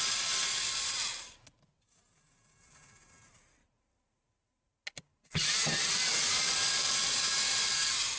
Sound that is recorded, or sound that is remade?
recorded